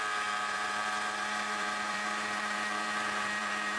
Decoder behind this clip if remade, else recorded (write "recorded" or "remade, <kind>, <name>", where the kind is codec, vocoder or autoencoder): remade, vocoder, BigVGAN v2